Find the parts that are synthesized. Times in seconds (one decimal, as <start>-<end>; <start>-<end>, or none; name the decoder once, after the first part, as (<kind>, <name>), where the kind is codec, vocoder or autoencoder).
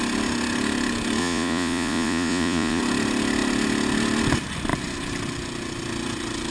1.2-2.8 (vocoder, Vocos)